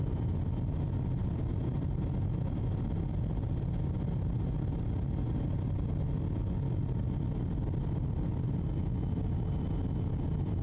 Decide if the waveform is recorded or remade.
recorded